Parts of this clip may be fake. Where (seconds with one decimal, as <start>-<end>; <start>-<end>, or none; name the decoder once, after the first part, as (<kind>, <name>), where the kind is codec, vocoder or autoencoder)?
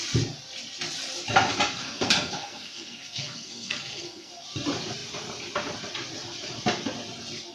1.8-4.3 (codec, SNAC)